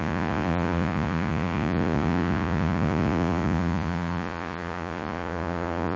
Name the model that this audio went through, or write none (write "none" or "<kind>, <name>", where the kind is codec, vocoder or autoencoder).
vocoder, Vocos